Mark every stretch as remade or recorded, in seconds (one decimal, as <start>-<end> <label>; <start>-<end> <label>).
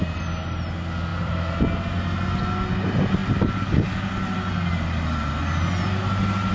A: 0.0-1.1 recorded; 1.1-1.6 remade; 1.6-6.5 recorded